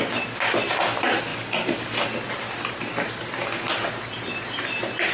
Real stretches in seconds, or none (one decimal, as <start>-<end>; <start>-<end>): 0.0-5.1